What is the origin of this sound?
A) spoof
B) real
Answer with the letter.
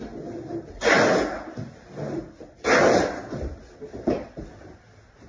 B